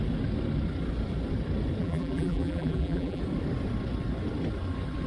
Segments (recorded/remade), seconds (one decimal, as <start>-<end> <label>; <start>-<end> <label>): 0.0-1.8 recorded; 1.8-3.2 remade; 3.2-5.1 recorded